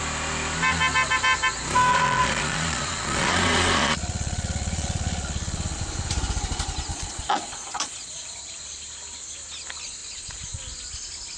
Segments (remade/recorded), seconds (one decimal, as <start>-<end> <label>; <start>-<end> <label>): 0.0-1.9 recorded; 1.9-5.8 remade; 5.8-6.9 recorded; 6.9-8.4 remade; 8.4-11.4 recorded